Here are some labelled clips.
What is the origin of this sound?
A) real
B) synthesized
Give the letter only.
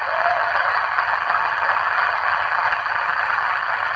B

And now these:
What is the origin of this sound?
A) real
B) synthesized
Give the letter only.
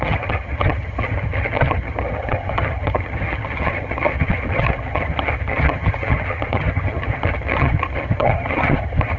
B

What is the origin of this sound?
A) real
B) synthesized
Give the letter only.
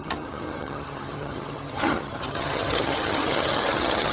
B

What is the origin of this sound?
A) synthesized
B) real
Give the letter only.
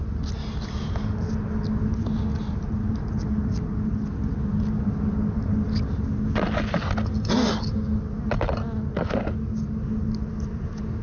B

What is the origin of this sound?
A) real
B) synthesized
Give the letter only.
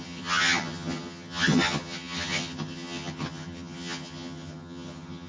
B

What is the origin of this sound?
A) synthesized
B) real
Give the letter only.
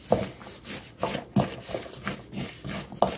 B